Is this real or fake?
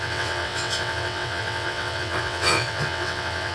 fake